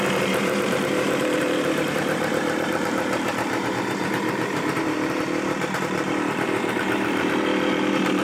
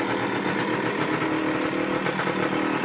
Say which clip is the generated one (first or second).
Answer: first